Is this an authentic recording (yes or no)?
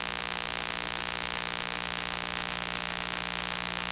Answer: yes